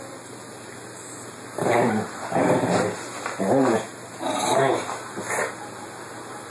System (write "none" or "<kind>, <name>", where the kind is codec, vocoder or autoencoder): none